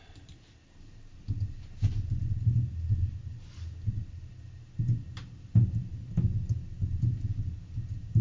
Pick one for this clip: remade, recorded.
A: recorded